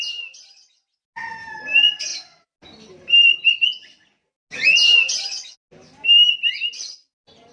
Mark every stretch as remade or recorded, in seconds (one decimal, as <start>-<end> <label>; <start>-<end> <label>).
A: 0.0-7.5 recorded